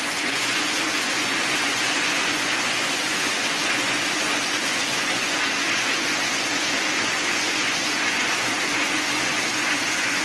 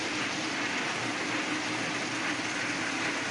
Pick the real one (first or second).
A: second